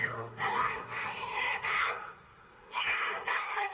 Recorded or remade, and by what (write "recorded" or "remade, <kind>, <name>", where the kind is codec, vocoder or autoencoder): remade, codec, SNAC